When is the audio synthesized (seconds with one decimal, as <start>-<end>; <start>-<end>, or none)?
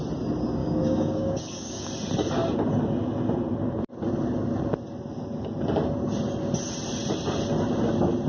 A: 0.6-1.9